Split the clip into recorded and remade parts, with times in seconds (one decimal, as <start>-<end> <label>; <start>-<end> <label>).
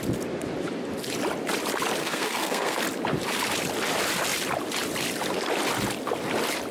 0.0-2.0 recorded; 2.0-2.8 remade; 2.8-6.7 recorded